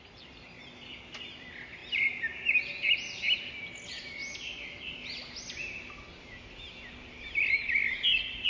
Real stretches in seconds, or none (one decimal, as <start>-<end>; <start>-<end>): 0.0-8.5